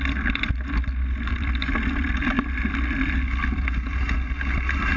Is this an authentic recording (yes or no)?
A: yes